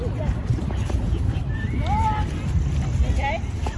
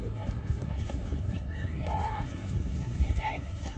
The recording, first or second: first